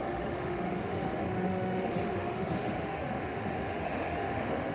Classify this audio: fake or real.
fake